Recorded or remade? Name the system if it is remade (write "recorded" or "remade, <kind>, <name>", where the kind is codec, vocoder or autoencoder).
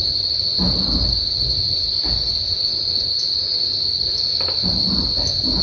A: recorded